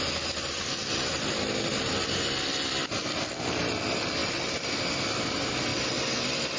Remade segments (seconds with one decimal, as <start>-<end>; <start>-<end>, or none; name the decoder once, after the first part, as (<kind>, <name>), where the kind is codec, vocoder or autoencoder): 0.8-3.3 (vocoder, BigVGAN v2); 4.2-4.8; 5.7-6.6